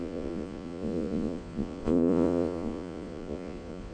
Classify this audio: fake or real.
fake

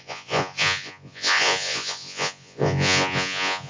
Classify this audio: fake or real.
fake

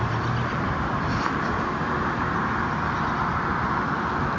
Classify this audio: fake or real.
real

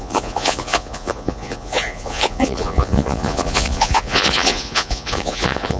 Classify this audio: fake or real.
fake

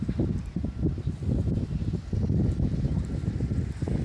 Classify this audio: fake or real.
real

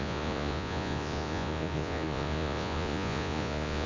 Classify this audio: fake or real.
fake